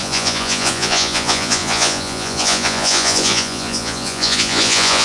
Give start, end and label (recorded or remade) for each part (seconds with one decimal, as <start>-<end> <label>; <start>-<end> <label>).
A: 0.0-5.0 remade